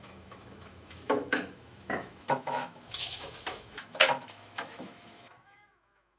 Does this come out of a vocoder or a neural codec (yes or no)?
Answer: yes